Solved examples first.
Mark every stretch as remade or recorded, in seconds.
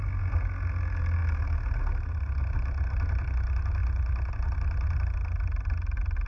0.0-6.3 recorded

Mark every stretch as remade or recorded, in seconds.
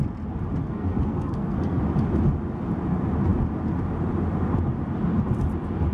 0.0-0.6 recorded; 0.6-1.8 remade; 1.8-5.9 recorded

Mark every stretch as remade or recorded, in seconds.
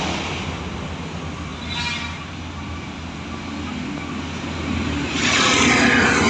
0.0-6.3 recorded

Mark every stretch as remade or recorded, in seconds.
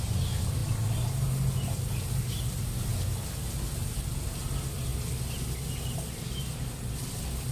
0.0-7.5 recorded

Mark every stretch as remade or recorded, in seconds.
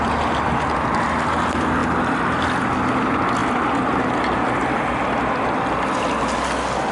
0.0-6.9 recorded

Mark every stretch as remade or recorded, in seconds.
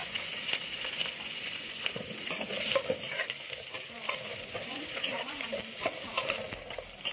0.0-2.5 remade; 2.5-4.3 recorded; 4.3-5.6 remade; 5.6-7.1 recorded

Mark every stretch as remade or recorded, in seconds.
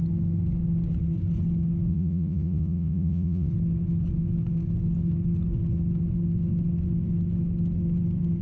0.0-1.9 recorded; 1.9-3.5 remade; 3.5-8.4 recorded